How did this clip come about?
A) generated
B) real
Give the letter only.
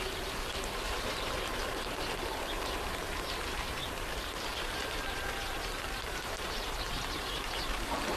A